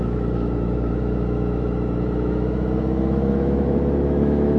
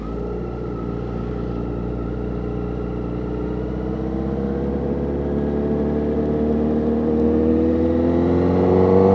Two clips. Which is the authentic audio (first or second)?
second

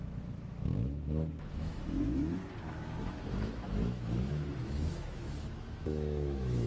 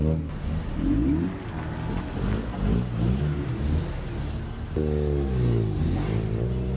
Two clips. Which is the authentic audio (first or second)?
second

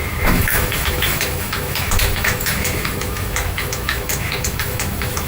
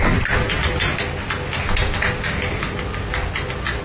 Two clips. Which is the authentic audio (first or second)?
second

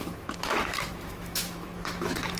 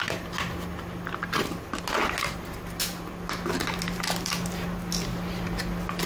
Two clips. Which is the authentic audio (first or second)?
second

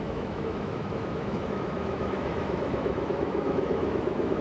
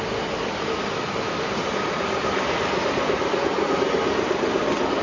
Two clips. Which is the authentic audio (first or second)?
second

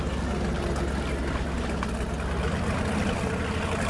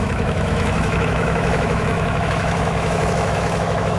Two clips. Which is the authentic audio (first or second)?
first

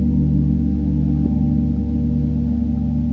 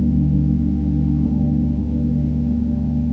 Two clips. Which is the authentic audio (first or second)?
first